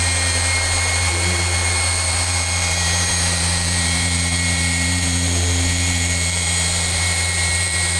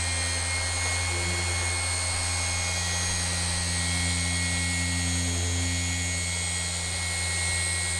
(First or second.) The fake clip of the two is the first